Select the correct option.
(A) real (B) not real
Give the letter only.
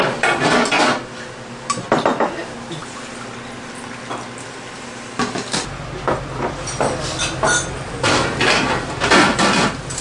A